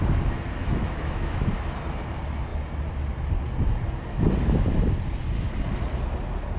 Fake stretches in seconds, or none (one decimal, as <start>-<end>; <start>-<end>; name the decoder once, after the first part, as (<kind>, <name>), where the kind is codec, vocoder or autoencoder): 0.6-1.5 (autoencoder, DAC-VAE)